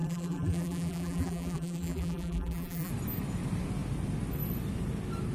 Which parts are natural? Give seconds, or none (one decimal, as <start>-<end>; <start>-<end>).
2.9-5.3

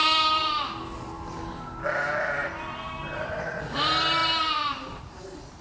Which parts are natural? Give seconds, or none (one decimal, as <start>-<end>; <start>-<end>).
0.0-5.6

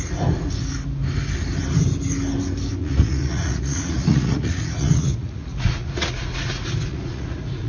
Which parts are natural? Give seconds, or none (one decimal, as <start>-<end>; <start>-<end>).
0.0-2.8